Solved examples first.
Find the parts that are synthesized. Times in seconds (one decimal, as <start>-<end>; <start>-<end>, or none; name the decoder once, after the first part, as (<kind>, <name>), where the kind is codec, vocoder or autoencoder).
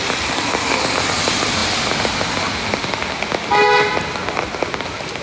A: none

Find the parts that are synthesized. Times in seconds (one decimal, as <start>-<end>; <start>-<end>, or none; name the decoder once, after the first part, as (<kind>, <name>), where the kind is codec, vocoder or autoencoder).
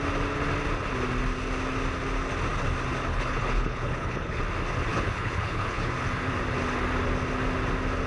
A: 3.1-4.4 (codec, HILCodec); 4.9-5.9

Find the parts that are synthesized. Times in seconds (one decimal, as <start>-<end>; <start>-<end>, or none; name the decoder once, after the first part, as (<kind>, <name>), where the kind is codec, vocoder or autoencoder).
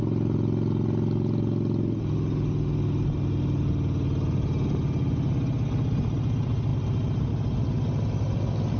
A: none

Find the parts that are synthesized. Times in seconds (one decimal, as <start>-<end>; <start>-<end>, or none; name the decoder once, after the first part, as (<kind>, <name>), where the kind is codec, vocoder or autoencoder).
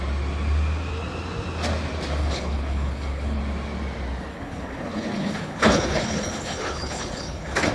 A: 2.2-3.4 (codec, HILCodec); 4.3-7.7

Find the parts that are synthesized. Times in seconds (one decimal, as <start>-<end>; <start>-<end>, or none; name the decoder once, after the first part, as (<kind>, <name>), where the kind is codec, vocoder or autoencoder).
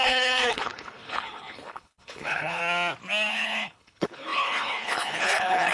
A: 0.0-2.6 (codec, HILCodec); 3.3-5.7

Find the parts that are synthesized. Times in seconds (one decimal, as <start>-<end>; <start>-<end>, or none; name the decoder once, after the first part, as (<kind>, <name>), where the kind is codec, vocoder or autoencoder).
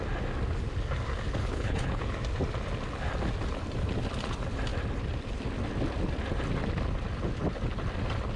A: 1.4-2.0 (codec, HILCodec)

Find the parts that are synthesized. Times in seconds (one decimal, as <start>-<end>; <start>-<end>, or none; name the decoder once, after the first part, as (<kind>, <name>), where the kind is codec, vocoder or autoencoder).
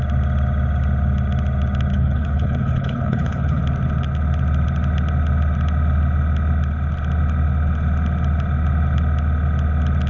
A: 1.9-3.6 (codec, HILCodec)